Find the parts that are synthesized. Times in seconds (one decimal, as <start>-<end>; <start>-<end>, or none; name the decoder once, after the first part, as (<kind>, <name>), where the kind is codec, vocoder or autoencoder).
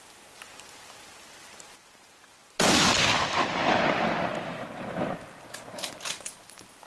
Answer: 0.0-2.4 (vocoder, BigVGAN v2); 2.9-6.9